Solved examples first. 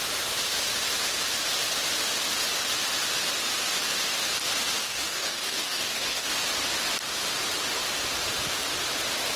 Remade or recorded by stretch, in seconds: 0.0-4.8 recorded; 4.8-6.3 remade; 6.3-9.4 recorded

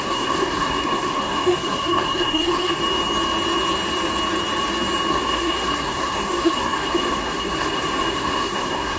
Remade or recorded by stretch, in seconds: 0.0-2.8 remade; 2.8-5.1 recorded; 5.1-9.0 remade

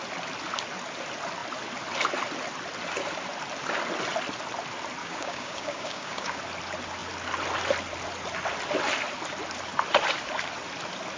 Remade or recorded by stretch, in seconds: 0.0-5.0 recorded; 5.0-6.4 remade; 6.4-11.2 recorded

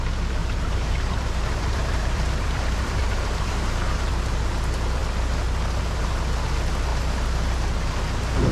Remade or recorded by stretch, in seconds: 0.0-0.4 recorded; 0.4-4.1 remade; 4.1-8.5 recorded

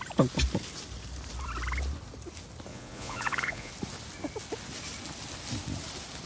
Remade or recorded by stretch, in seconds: 0.0-2.7 recorded; 2.7-3.7 remade; 3.7-6.3 recorded